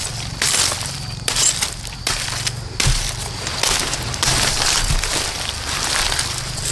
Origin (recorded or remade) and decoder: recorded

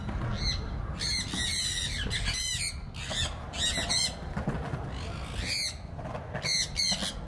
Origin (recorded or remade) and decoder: recorded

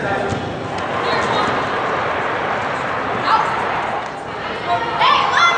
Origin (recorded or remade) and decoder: recorded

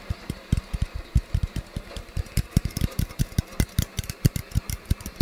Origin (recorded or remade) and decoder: remade, vocoder, BigVGAN v2